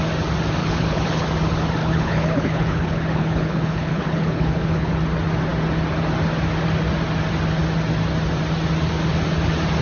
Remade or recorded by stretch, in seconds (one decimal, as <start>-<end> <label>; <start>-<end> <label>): 0.0-0.6 recorded; 0.6-1.3 remade; 1.3-1.8 recorded; 1.8-4.9 remade; 4.9-9.8 recorded